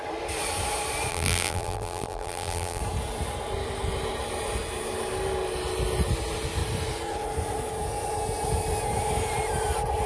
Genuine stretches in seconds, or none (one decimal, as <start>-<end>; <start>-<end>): 0.0-1.1; 2.8-10.1